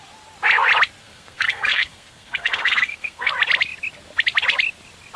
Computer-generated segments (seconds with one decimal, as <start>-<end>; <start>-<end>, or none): 1.0-3.3